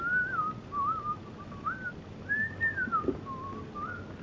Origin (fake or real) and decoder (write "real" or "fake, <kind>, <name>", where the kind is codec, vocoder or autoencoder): real